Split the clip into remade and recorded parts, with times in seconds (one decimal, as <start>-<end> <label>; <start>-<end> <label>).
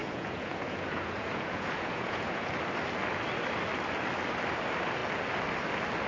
0.0-2.5 remade; 2.5-6.1 recorded